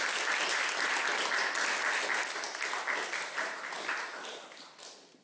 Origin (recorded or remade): recorded